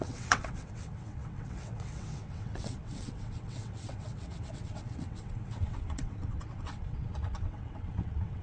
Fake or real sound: fake